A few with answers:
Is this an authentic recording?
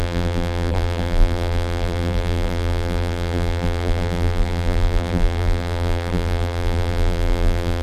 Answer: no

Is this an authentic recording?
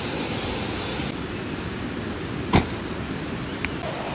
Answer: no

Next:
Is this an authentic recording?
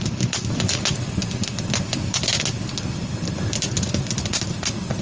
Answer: yes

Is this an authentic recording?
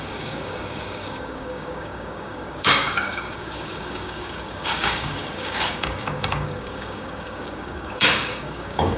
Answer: no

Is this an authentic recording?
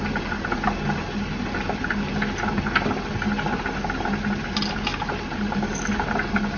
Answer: yes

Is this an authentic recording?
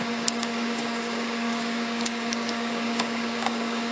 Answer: no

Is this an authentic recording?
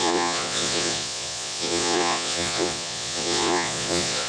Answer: no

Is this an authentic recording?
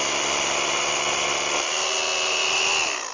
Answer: yes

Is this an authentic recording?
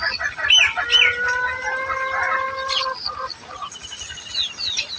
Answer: yes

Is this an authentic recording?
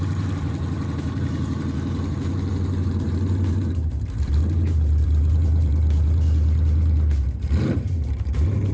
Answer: no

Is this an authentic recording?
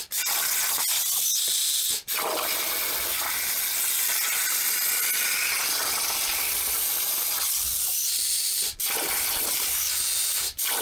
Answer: yes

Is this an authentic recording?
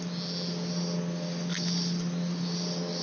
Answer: yes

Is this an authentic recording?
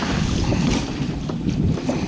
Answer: yes